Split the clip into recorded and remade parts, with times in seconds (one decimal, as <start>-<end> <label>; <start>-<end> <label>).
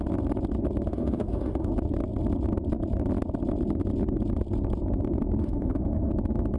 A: 0.0-0.9 recorded; 0.9-1.7 remade; 1.7-5.4 recorded; 5.4-6.1 remade; 6.1-6.6 recorded